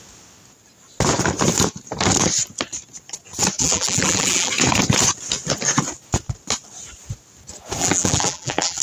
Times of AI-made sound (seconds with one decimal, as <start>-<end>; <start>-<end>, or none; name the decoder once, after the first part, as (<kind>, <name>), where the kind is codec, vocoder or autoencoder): 3.6-4.5 (vocoder, BigVGAN v2); 7.8-8.8